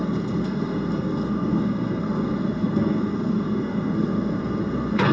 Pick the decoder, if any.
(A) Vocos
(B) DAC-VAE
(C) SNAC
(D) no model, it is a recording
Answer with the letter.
C